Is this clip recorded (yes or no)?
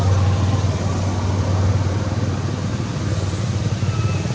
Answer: yes